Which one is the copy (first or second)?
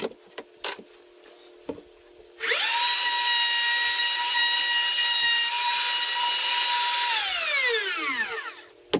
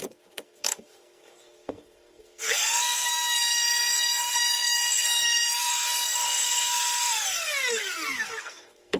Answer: second